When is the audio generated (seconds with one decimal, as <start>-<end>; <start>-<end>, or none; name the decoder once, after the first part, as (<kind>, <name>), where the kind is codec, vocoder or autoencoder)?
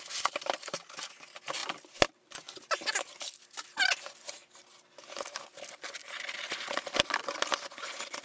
none